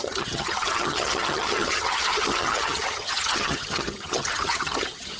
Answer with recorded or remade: remade